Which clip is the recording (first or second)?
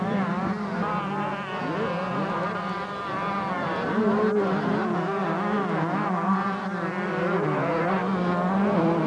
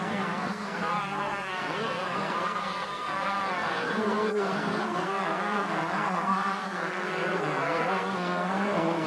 first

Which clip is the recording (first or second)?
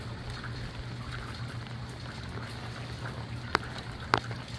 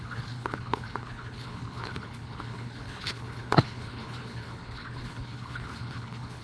first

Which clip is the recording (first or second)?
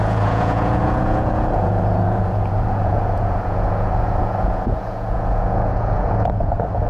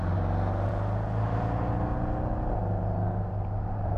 second